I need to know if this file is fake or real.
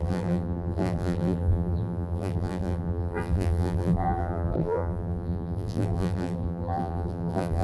fake